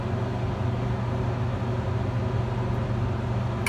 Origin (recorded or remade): recorded